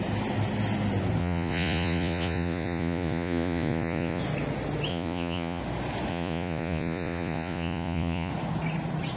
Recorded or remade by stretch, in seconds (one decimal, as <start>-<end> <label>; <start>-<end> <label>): 0.0-1.2 recorded; 1.2-4.2 remade; 4.2-4.9 recorded; 4.9-5.6 remade; 5.6-6.1 recorded; 6.1-8.3 remade; 8.3-9.2 recorded